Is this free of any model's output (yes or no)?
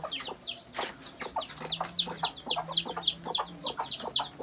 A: yes